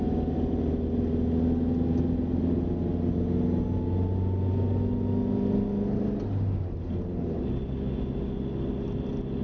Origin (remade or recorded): recorded